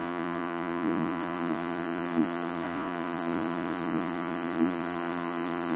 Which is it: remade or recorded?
remade